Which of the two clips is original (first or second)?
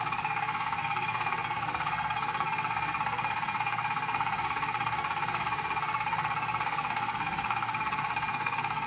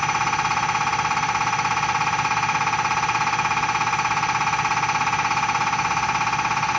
second